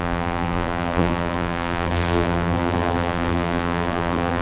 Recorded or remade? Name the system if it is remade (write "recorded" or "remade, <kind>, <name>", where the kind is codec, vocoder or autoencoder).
remade, vocoder, BigVGAN v2